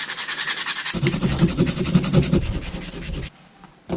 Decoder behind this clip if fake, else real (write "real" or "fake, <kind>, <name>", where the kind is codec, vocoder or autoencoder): real